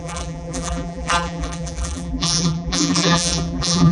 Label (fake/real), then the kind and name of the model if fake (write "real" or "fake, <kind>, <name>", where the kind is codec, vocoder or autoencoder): fake, vocoder, BigVGAN v2